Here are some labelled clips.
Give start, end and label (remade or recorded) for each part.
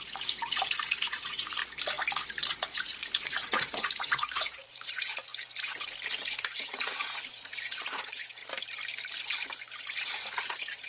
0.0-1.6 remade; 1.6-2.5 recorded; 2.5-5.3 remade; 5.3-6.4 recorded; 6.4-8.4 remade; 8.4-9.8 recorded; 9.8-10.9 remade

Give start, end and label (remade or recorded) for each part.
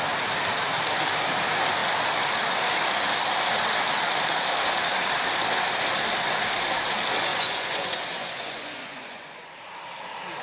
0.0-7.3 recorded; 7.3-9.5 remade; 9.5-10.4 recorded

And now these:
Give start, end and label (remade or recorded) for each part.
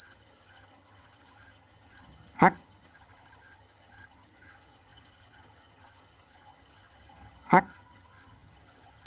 0.0-9.1 remade